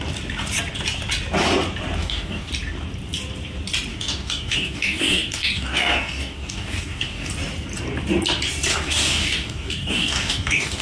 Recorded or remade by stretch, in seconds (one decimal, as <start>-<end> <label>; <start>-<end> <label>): 0.0-2.0 recorded; 2.0-2.5 remade; 2.5-3.9 recorded; 3.9-7.3 remade; 7.3-8.7 recorded; 8.7-10.8 remade